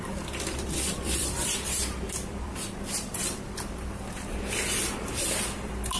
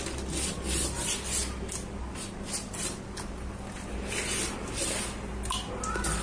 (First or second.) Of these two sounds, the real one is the second